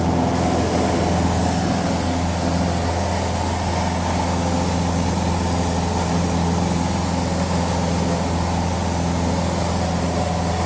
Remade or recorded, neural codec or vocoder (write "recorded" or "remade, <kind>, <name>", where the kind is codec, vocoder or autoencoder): recorded